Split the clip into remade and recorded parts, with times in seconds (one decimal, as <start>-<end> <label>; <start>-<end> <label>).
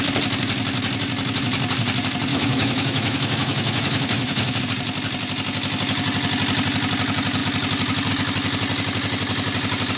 0.0-2.3 recorded; 2.3-4.6 remade; 4.6-10.0 recorded